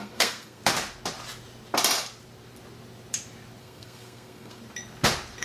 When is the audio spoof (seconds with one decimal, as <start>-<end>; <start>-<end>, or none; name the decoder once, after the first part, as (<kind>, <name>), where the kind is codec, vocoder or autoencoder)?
0.0-0.6 (codec, SNAC); 3.6-4.6